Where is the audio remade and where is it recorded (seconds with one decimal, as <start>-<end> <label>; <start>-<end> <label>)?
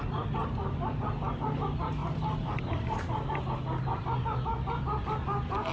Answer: 0.0-0.4 recorded; 0.4-1.0 remade; 1.0-2.0 recorded; 2.0-3.4 remade; 3.4-5.7 recorded